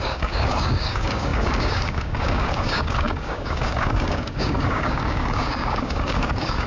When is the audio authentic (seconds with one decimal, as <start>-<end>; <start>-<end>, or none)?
none